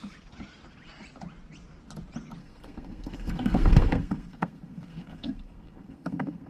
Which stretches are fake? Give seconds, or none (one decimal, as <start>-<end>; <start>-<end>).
2.4-6.5